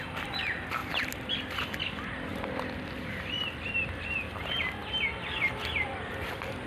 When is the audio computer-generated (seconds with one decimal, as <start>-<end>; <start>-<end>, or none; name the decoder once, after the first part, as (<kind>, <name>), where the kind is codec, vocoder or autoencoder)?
none